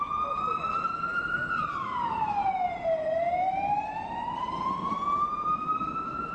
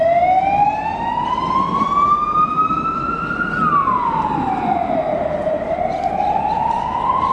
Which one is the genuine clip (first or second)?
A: second